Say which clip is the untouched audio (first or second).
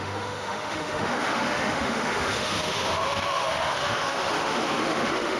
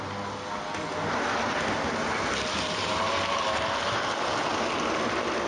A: second